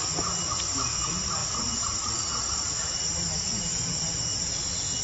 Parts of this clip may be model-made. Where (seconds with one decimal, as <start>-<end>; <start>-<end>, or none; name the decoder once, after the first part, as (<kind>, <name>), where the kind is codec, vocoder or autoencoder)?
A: none